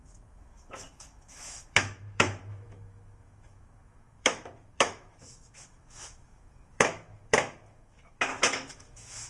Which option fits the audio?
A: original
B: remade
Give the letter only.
B